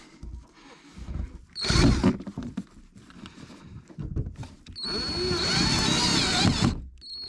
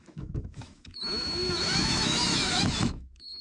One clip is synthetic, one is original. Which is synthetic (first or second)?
second